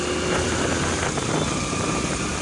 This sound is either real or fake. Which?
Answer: real